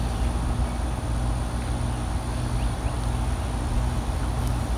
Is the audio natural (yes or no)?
yes